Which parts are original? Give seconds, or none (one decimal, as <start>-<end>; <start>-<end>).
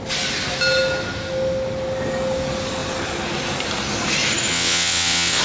0.0-4.5